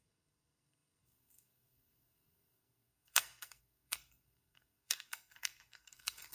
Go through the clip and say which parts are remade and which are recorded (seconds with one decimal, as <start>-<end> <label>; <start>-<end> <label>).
0.0-6.3 remade